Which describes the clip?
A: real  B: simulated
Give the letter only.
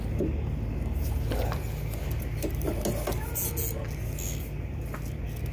A